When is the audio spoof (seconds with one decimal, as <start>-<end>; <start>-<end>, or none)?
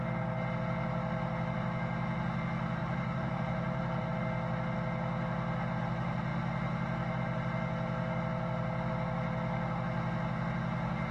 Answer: 2.8-4.1